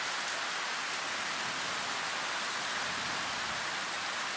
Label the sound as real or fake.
real